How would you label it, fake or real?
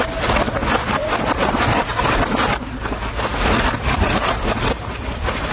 real